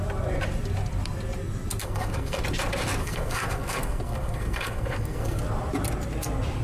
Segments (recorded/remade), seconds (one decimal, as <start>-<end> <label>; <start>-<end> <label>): 0.0-1.8 recorded; 1.8-2.4 remade; 2.4-3.0 recorded; 3.0-5.4 remade; 5.4-6.6 recorded